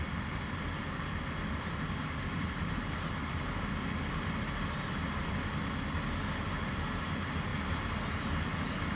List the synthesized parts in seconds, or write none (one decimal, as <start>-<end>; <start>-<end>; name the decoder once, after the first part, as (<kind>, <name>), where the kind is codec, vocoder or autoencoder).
none